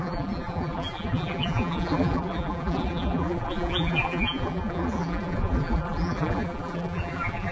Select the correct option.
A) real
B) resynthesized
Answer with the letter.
B